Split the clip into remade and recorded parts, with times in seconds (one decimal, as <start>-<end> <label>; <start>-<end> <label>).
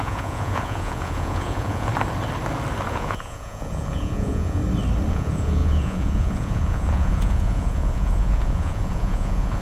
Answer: 0.0-1.9 remade; 1.9-2.9 recorded; 2.9-4.6 remade; 4.6-5.1 recorded; 5.1-9.6 remade